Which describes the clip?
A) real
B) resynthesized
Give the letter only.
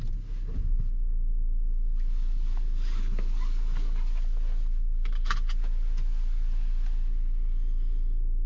A